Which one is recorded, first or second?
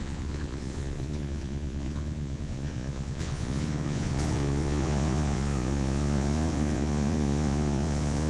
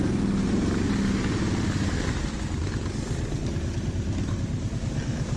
second